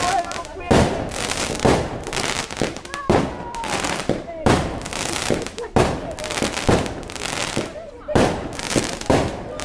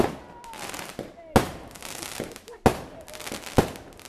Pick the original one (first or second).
second